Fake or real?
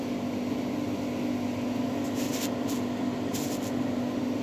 real